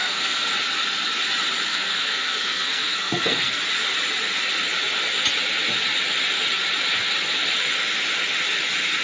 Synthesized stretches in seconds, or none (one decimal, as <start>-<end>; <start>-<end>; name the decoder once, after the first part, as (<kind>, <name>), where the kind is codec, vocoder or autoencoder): 0.0-0.5 (codec, SNAC); 1.7-3.6